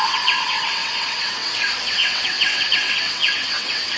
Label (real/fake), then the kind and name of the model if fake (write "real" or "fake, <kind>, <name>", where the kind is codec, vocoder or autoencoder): fake, vocoder, WaveNeXt